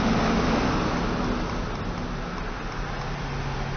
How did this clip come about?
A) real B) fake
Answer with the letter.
A